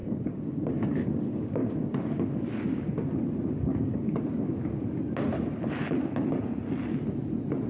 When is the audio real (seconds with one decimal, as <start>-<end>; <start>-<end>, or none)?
2.8-3.7; 4.5-7.7